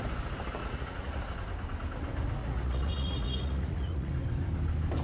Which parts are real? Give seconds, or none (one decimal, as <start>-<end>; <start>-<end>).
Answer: 0.0-0.6; 1.2-2.4; 4.1-5.0